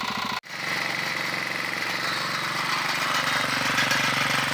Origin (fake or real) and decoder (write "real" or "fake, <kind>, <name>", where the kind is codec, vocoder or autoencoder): real